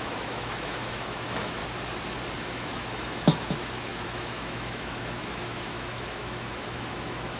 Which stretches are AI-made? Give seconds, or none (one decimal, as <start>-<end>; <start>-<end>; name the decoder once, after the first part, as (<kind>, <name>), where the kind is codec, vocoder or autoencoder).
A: 0.0-1.6 (autoencoder, DAC-VAE); 2.4-7.4